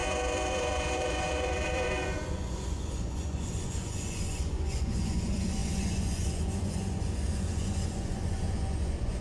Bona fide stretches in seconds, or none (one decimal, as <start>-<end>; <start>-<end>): none